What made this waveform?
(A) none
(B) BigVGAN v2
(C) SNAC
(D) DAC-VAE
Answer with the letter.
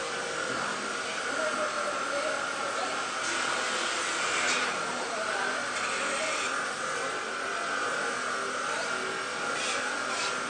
A